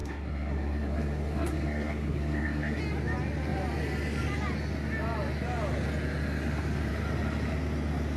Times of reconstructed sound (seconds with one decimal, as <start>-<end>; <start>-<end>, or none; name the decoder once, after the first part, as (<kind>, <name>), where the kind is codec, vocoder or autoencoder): 0.0-2.8 (codec, SNAC)